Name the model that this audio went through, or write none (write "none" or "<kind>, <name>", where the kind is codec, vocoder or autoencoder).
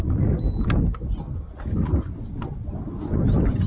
none